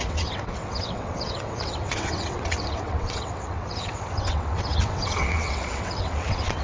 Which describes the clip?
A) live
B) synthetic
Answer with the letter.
B